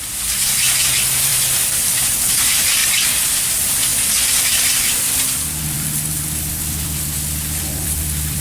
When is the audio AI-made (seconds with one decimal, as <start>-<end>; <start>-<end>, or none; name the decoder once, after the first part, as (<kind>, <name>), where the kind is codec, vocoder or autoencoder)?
0.0-2.8 (vocoder, BigVGAN v2); 3.4-8.4